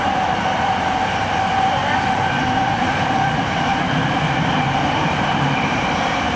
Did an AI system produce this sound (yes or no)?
yes